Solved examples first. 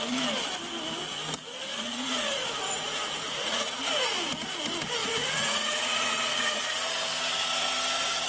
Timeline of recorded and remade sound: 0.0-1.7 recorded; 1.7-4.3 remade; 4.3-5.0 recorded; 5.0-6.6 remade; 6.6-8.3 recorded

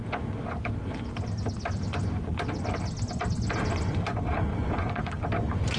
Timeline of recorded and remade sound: 0.0-4.5 recorded; 4.5-5.1 remade; 5.1-5.8 recorded

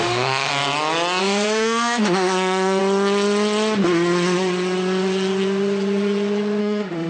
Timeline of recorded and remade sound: 0.0-0.5 remade; 0.5-1.2 recorded; 1.2-2.8 remade; 2.8-6.6 recorded; 6.6-7.1 remade

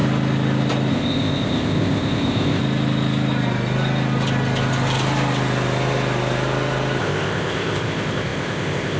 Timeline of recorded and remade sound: 0.0-0.9 recorded; 0.9-2.6 remade; 2.6-7.0 recorded; 7.0-9.0 remade

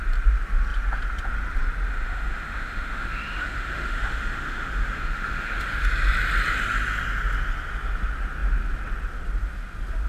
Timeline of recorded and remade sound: 0.0-1.9 recorded; 1.9-5.9 remade; 5.9-10.1 recorded

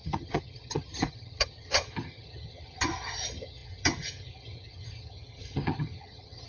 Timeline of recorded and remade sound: 0.0-6.5 remade

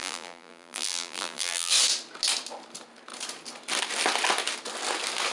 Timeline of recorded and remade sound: 0.0-1.7 remade; 1.7-5.3 recorded